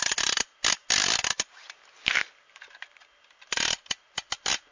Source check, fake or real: real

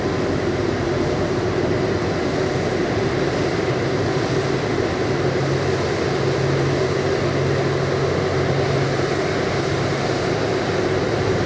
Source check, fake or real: real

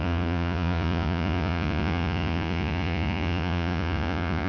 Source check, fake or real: fake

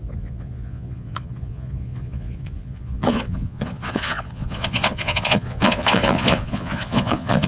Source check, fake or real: fake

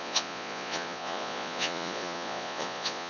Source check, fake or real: fake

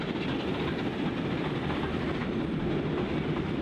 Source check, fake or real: real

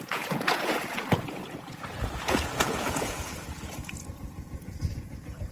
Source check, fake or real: fake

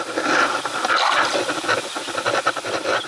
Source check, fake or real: real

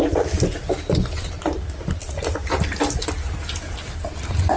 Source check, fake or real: real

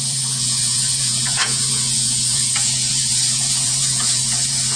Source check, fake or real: fake